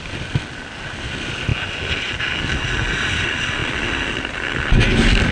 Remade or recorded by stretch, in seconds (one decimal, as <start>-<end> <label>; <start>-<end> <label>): 0.0-5.3 recorded